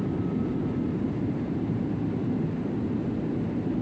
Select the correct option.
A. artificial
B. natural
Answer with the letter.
A